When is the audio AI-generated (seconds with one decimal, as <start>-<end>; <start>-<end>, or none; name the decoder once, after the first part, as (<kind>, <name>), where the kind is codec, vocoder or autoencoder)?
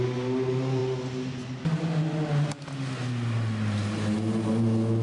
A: none